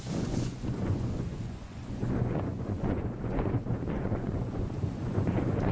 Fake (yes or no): yes